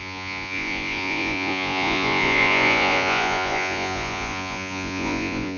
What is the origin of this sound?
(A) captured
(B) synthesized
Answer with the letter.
B